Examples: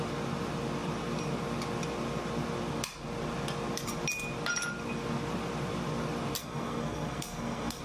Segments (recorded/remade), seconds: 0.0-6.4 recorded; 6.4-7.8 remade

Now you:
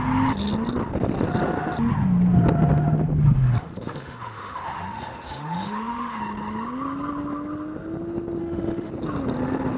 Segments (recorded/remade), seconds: 0.0-3.6 recorded; 3.6-6.2 remade; 6.2-8.4 recorded; 8.4-8.9 remade; 8.9-9.8 recorded

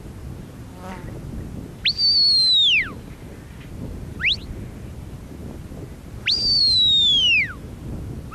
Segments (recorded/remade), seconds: 0.0-8.3 recorded

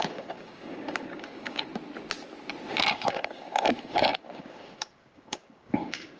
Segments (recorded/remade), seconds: 0.0-1.7 remade; 1.7-2.9 recorded; 2.9-6.2 remade

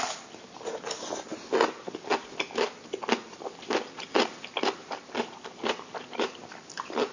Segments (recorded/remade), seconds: 0.0-7.1 recorded

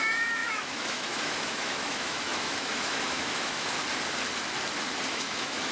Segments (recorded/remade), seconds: 0.0-3.8 remade; 3.8-5.1 recorded; 5.1-5.7 remade

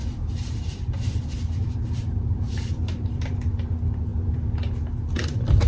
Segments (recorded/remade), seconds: 0.0-3.4 remade; 3.4-5.7 recorded